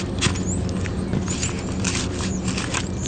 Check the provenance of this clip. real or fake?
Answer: real